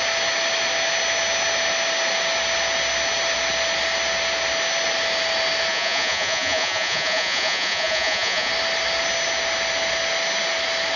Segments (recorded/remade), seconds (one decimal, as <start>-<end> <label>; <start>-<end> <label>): 0.0-5.7 recorded; 5.7-8.5 remade; 8.5-11.0 recorded